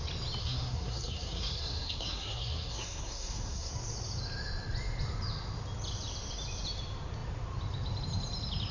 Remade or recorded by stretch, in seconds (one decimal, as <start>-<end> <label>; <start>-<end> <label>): 0.0-0.4 recorded; 0.4-3.7 remade; 3.7-8.7 recorded